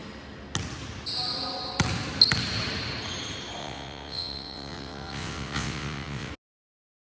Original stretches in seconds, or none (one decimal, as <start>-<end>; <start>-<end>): 0.0-3.6; 6.3-7.0